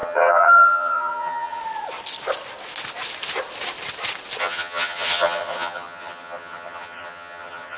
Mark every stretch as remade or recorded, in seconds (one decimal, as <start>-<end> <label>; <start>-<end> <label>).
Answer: 0.0-1.6 remade; 1.6-4.4 recorded; 4.4-7.8 remade